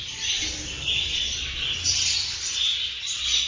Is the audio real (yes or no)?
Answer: yes